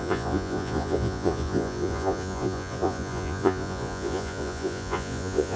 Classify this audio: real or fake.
fake